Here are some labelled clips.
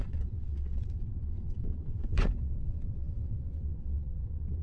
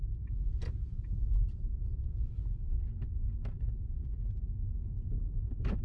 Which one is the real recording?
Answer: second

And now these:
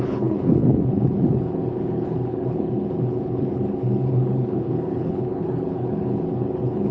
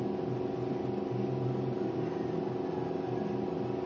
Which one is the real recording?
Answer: second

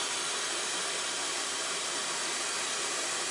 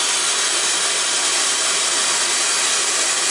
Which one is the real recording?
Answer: second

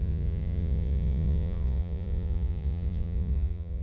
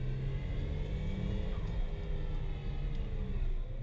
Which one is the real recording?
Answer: second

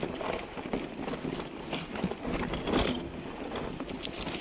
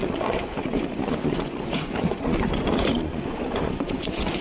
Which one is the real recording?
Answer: first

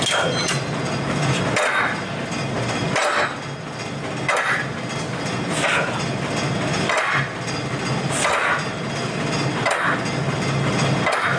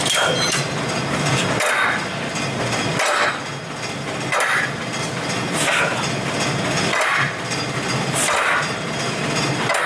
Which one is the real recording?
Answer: first